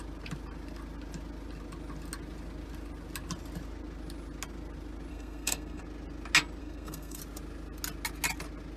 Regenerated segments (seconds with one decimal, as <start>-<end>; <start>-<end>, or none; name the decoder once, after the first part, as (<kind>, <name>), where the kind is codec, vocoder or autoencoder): 5.1-5.8 (codec, SNAC); 6.6-7.2